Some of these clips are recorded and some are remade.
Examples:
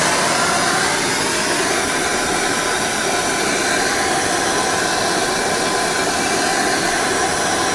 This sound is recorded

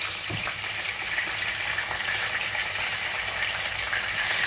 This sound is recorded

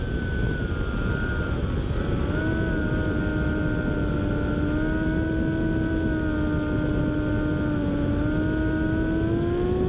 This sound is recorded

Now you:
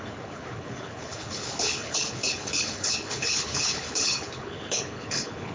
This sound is remade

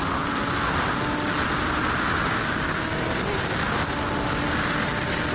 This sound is recorded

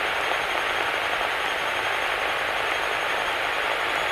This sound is recorded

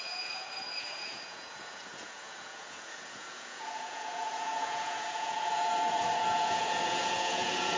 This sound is remade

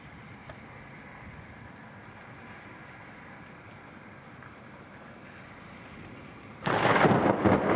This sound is recorded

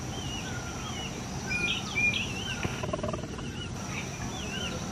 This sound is recorded